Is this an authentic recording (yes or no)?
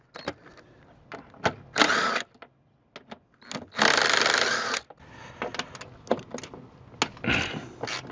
yes